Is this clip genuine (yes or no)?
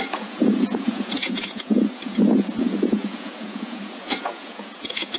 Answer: no